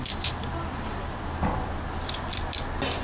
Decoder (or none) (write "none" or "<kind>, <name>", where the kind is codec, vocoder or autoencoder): none